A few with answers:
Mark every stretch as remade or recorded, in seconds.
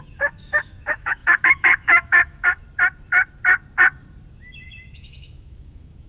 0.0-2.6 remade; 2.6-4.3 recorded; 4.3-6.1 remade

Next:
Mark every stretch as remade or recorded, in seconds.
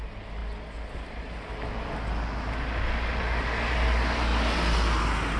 0.0-5.4 recorded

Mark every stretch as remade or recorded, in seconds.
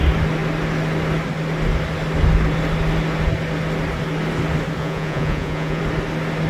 0.0-4.8 recorded; 4.8-5.8 remade; 5.8-6.5 recorded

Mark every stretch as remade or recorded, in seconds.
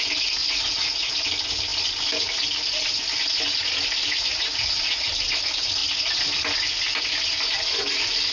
0.0-0.4 recorded; 0.4-1.1 remade; 1.1-4.1 recorded; 4.1-5.1 remade; 5.1-8.3 recorded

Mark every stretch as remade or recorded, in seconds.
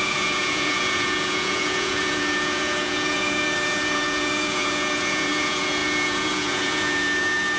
0.0-7.6 remade